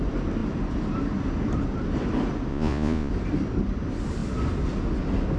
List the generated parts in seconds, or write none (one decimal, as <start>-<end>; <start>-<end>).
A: 2.5-3.1